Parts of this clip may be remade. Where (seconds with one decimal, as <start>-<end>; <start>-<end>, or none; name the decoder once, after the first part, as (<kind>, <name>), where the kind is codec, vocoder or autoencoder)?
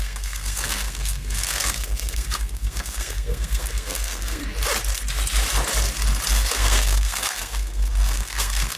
0.0-4.4 (codec, SNAC); 6.3-8.8